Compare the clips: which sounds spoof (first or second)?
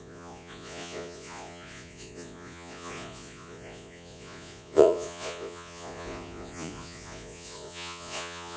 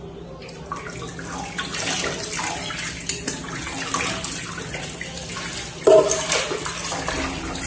first